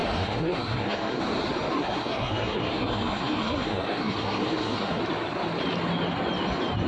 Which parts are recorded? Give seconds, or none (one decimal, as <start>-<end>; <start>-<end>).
1.2-1.8; 5.0-6.9